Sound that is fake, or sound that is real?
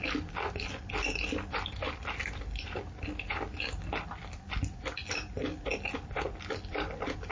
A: real